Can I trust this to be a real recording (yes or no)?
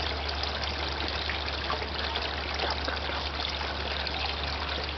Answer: yes